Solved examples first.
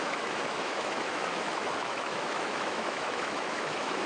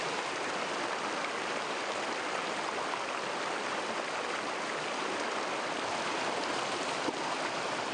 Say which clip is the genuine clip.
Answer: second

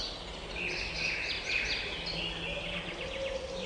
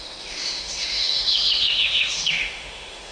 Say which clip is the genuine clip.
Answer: first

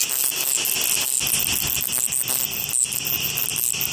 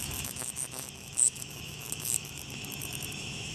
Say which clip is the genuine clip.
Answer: first